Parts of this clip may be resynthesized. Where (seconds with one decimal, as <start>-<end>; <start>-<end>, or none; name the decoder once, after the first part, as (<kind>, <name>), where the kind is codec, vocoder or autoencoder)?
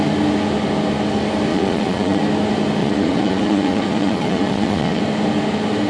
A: 1.5-2.2 (vocoder, Vocos); 2.8-5.0